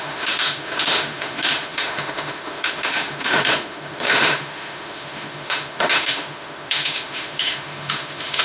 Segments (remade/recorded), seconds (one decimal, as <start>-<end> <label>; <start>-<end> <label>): 0.0-8.4 remade